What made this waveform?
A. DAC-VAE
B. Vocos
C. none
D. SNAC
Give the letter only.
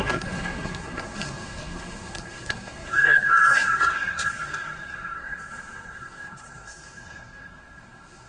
D